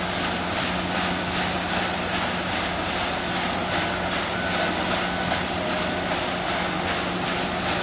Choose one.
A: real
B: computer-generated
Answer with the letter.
A